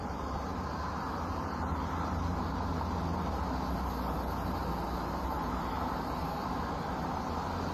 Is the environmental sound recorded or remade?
recorded